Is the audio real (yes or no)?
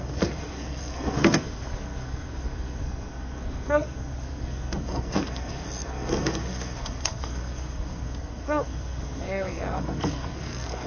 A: no